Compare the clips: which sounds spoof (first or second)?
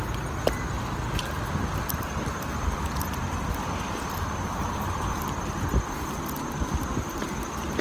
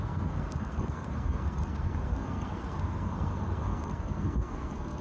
second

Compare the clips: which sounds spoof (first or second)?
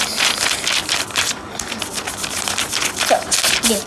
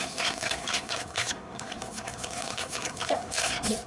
second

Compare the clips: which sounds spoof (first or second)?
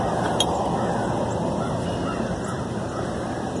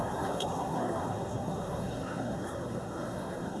second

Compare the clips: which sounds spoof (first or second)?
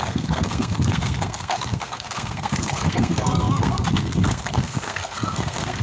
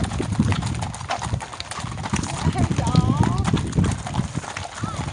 first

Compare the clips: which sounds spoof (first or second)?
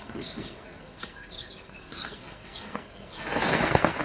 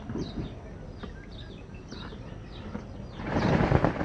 first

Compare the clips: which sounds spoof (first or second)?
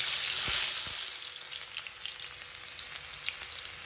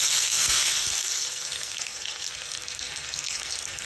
second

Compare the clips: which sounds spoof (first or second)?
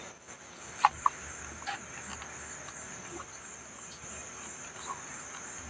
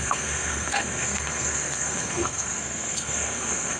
second